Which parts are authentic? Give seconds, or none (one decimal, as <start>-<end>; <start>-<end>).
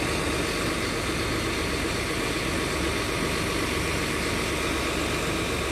0.0-5.7